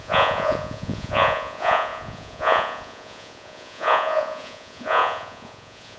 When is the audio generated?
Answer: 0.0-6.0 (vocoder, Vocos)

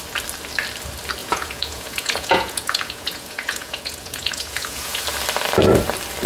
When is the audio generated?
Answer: 1.2-5.0 (vocoder, Vocos)

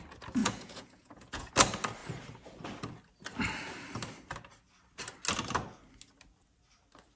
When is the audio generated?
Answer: 0.4-1.5 (vocoder, Vocos)

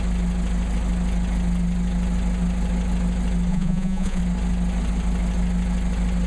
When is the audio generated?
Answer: 3.5-4.2 (vocoder, Vocos)

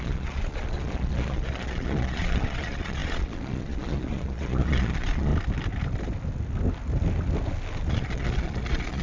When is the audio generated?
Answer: 0.0-5.3 (vocoder, Vocos); 7.9-9.0